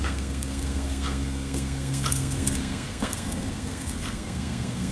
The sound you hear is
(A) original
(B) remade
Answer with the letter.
B